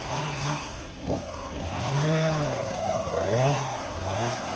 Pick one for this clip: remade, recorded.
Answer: remade